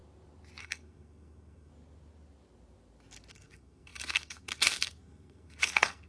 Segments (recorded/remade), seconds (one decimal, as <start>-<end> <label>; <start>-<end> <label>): 0.0-0.6 recorded; 0.6-1.7 remade; 1.7-3.3 recorded; 3.3-6.1 remade